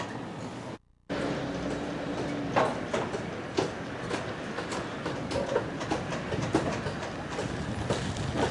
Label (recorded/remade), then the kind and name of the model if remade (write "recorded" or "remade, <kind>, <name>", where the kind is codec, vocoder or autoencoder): recorded